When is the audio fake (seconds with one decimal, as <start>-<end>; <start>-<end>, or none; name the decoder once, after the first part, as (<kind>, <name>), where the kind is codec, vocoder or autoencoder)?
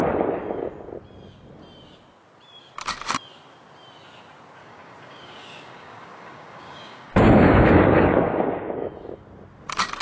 4.6-8.9 (codec, DAC)